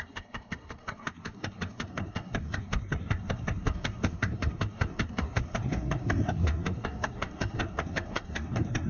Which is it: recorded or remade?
remade